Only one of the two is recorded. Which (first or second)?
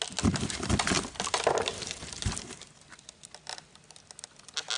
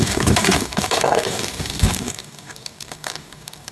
first